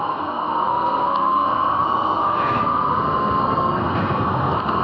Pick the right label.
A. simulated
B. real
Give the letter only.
A